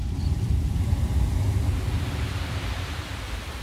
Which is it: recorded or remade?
remade